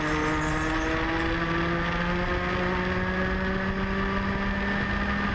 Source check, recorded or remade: recorded